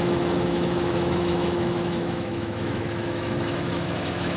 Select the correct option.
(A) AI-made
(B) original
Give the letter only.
A